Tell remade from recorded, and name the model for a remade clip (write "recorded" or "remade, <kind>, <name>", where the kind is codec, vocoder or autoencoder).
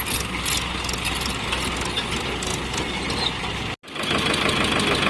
recorded